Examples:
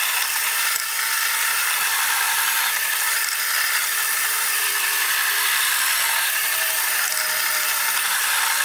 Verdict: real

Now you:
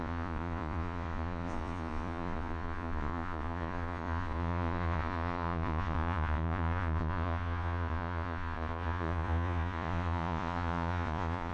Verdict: fake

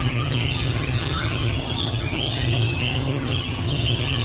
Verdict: fake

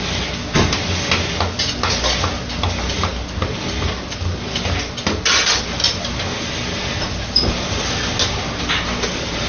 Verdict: real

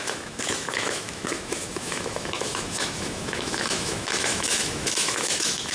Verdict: fake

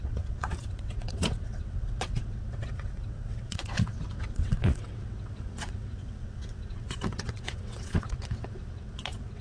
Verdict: fake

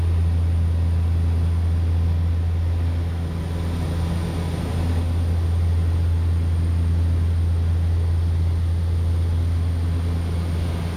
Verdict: real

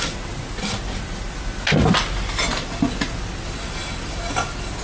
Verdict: real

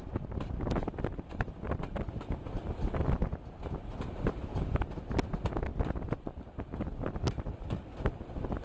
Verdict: real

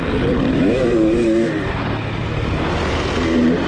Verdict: fake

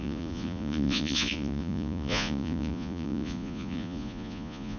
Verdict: fake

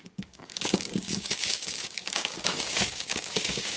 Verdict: fake